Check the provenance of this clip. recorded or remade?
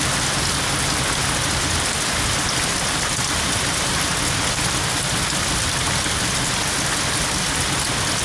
recorded